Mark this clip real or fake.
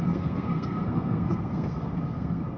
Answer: fake